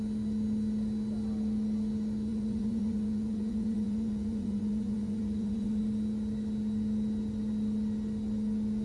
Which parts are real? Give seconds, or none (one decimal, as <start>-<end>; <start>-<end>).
0.0-2.3; 5.8-8.8